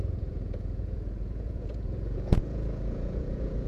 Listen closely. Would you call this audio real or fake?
fake